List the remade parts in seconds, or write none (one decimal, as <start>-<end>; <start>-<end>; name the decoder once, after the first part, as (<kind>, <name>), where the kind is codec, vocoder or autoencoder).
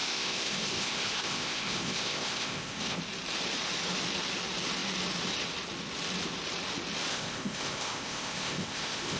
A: 0.0-3.0 (codec, ZipCodec); 7.1-9.2